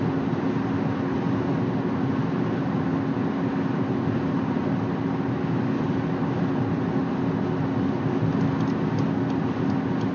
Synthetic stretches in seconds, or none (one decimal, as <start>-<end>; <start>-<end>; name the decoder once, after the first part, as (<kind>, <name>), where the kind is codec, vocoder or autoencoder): none